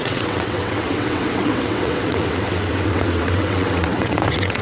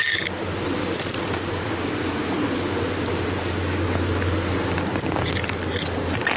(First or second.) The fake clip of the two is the first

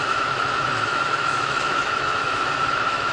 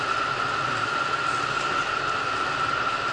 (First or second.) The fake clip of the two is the first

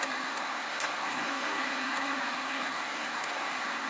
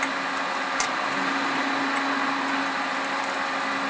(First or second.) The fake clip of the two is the first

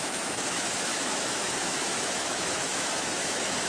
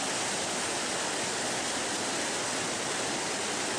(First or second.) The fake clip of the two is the first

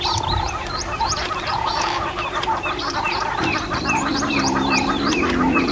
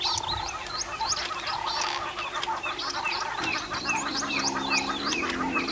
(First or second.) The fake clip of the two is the first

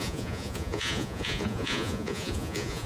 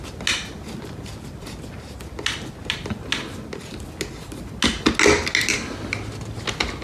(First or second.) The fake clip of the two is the first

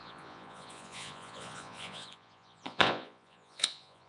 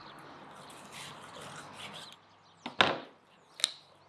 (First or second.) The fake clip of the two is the first